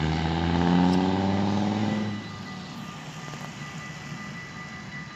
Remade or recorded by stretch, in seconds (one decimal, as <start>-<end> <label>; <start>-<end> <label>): 0.0-5.2 recorded